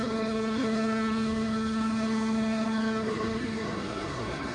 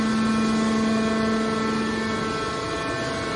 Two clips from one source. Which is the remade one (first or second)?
first